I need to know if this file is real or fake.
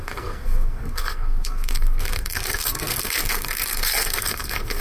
fake